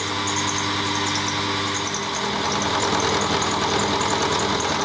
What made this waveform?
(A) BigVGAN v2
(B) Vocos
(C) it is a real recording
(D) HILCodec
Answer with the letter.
C